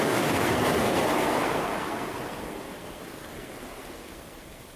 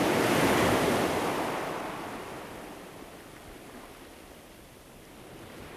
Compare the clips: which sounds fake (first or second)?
first